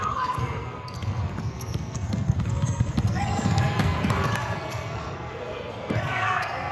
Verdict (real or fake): fake